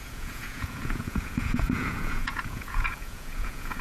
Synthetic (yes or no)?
yes